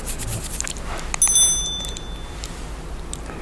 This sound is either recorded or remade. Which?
recorded